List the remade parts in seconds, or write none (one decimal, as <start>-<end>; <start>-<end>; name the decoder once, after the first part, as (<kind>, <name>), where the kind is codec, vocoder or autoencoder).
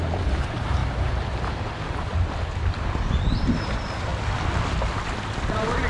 0.0-0.8 (vocoder, BigVGAN v2); 2.8-4.1; 5.5-5.9